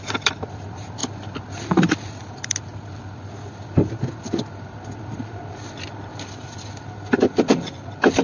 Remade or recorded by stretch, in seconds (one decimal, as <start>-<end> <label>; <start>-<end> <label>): 0.0-1.0 remade; 1.0-1.6 recorded; 1.6-8.2 remade